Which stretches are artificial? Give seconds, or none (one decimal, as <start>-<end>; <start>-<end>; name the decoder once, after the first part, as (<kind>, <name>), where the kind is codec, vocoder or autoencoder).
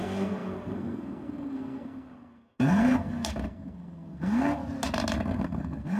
0.0-4.6 (codec, SNAC); 5.2-6.0